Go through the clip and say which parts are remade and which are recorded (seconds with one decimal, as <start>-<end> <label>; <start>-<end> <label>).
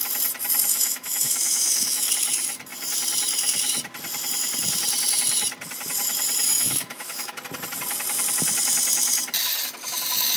0.0-0.7 recorded; 0.7-2.1 remade; 2.1-6.5 recorded; 6.5-7.4 remade; 7.4-10.4 recorded